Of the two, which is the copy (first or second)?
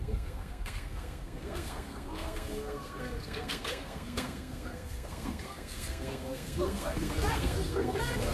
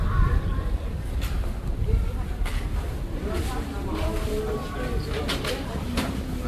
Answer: first